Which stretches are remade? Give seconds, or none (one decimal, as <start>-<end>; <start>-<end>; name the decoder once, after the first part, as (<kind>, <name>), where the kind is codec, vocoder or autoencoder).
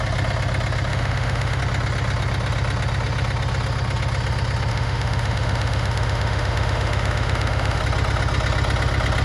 0.9-1.6 (autoencoder, DAC-VAE); 4.7-7.8